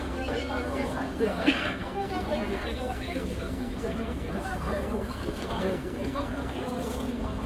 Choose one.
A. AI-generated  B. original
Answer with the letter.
A